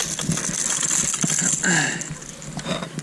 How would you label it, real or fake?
real